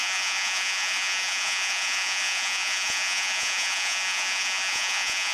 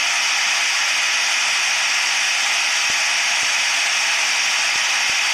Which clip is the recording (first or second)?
second